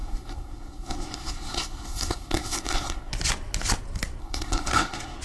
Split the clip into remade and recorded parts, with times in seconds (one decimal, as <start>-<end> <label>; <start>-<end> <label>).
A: 0.0-3.1 remade; 3.1-4.2 recorded; 4.2-5.2 remade